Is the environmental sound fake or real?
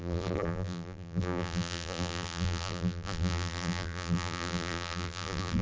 fake